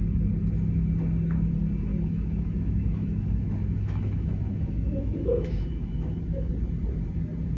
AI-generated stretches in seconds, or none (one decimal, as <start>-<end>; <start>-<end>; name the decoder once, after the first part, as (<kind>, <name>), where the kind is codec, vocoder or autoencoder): 1.9-6.5 (autoencoder, DAC-VAE)